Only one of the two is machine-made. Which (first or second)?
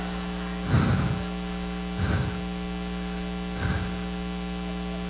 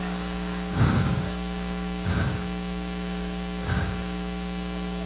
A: second